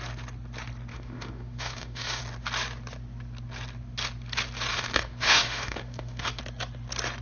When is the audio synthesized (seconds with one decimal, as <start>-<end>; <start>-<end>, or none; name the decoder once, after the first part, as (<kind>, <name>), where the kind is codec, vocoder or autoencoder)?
0.9-2.2 (autoencoder, DAC-VAE); 4.7-6.4

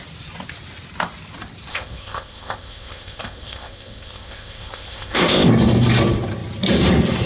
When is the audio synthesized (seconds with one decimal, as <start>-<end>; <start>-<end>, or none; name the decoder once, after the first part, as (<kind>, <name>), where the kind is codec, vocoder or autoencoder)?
1.7-5.5 (codec, ZipCodec)

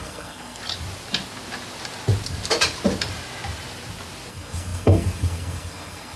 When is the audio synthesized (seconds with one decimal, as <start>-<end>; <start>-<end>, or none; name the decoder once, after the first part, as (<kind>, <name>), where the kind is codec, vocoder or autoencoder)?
0.0-0.6 (codec, SNAC); 4.3-6.2

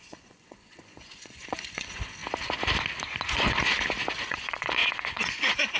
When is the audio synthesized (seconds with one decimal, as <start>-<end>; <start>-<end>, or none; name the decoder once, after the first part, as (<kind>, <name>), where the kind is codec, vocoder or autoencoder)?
0.0-2.2 (vocoder, Vocos); 3.0-3.7; 4.3-5.8

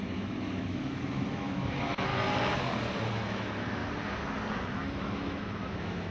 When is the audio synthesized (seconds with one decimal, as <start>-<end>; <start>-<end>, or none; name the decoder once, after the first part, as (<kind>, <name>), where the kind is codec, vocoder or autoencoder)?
0.0-2.1 (autoencoder, DAC-VAE); 3.1-3.8; 4.6-6.1

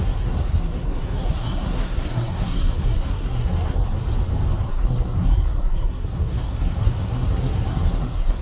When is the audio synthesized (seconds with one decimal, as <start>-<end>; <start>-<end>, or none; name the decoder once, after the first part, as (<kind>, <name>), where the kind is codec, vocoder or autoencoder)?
0.0-3.8 (codec, SNAC); 4.7-8.4